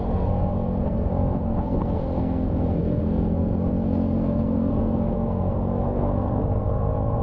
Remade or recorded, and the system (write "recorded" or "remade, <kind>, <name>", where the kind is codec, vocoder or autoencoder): remade, codec, SNAC